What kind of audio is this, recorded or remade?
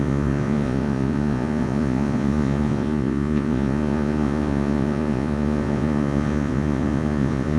remade